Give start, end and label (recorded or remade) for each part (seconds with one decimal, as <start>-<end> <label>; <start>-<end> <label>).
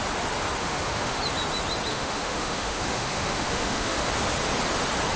0.0-0.6 recorded; 0.6-1.2 remade; 1.2-1.9 recorded; 1.9-4.1 remade; 4.1-5.2 recorded